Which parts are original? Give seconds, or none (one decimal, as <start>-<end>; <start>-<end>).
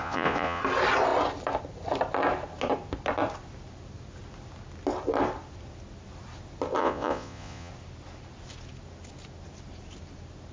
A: 0.6-6.8; 7.7-10.5